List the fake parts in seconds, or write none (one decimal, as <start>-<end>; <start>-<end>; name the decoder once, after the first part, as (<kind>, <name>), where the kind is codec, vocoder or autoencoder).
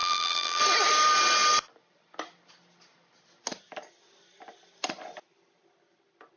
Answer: 0.0-0.6 (vocoder, BigVGAN v2)